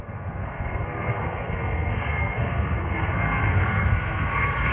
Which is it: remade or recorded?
remade